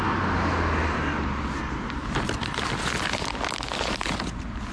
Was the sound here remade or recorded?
recorded